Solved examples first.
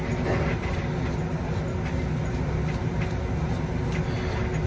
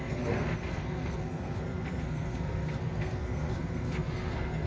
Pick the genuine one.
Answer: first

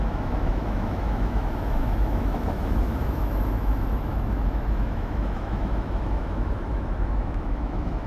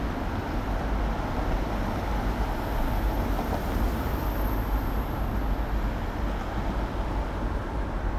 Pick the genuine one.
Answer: second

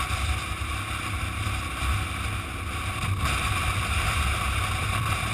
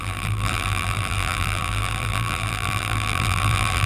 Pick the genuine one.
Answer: first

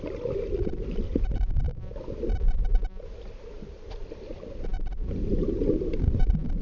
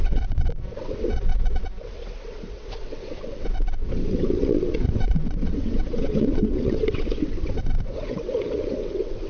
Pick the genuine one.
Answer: first